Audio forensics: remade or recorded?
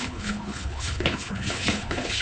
remade